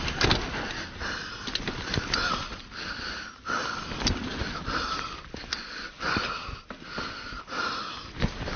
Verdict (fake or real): real